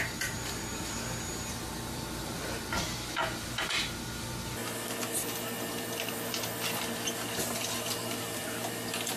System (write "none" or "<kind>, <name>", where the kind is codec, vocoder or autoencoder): none